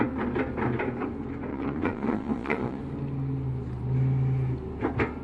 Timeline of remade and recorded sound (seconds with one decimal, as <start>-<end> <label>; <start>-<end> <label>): 0.0-1.5 recorded; 1.5-2.8 remade; 2.8-5.2 recorded